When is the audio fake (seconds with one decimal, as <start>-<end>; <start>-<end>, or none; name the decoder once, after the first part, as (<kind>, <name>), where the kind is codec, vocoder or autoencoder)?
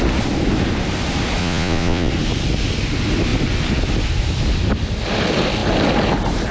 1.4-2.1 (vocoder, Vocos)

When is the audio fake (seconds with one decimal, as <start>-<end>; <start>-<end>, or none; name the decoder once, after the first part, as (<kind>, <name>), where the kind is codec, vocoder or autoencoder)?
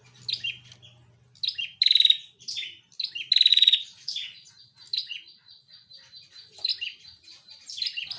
3.5-4.5 (vocoder, Vocos); 5.0-5.9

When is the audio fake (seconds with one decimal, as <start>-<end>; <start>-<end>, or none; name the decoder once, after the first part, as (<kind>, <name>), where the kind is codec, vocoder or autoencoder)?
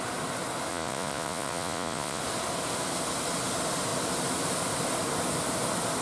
0.7-2.2 (vocoder, Vocos)